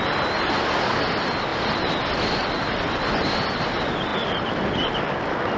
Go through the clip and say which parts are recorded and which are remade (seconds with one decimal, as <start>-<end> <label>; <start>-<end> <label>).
0.0-5.6 recorded